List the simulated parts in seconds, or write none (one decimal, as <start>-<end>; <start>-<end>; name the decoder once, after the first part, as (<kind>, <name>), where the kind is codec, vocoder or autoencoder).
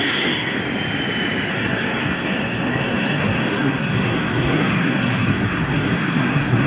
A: 0.0-0.6 (codec, SNAC); 1.5-6.7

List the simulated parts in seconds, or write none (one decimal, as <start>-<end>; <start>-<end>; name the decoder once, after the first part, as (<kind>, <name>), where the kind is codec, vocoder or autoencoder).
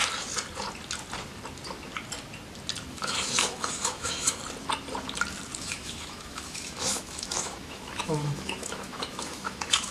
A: 2.9-4.4 (autoencoder, DAC-VAE); 5.6-9.9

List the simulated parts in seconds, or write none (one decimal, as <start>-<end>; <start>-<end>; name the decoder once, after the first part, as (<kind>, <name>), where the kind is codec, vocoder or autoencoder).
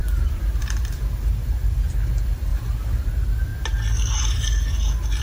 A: 0.0-1.5 (vocoder, BigVGAN v2)